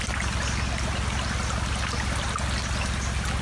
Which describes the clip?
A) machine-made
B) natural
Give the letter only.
B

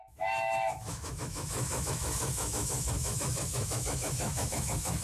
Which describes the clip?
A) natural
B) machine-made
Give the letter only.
B